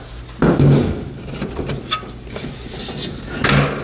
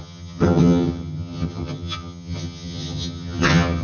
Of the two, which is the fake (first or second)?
second